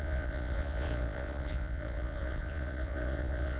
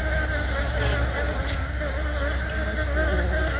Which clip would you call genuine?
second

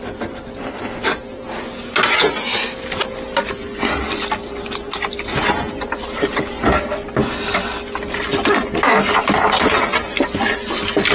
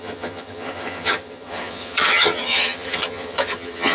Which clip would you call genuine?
first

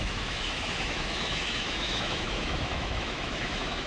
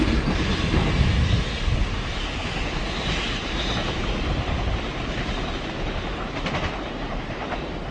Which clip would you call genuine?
second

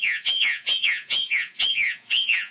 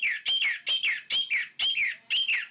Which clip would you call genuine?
second